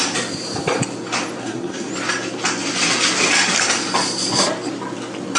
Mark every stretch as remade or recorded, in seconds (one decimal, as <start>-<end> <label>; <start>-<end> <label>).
0.0-1.4 recorded; 1.4-1.9 remade; 1.9-5.4 recorded